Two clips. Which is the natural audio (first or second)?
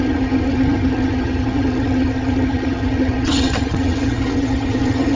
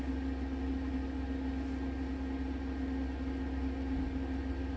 second